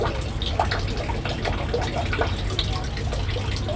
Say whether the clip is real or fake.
real